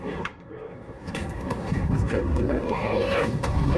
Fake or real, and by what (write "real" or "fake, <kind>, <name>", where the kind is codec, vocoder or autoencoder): fake, codec, SNAC